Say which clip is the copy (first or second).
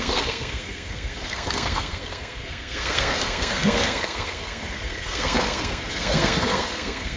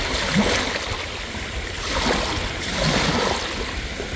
first